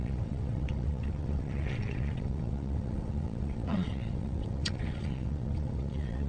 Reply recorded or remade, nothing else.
remade